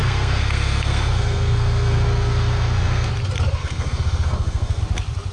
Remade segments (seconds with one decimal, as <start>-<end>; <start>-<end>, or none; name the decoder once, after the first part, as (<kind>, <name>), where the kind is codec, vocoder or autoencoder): 0.0-3.1 (codec, SNAC); 3.6-4.8